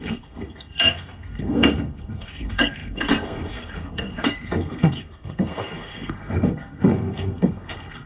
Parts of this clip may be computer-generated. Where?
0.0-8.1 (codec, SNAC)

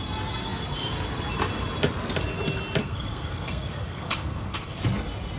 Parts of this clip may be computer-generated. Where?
2.8-4.8 (codec, SNAC)

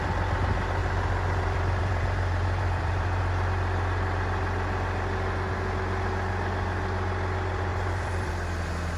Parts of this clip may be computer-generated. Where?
0.8-3.2 (vocoder, BigVGAN v2); 7.7-8.3

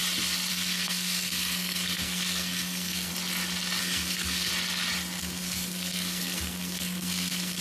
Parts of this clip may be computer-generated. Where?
0.5-3.1 (codec, SNAC); 3.8-4.5; 5.2-7.6